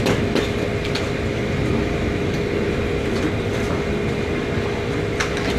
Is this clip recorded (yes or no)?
yes